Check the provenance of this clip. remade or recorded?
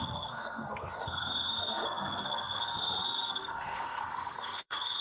remade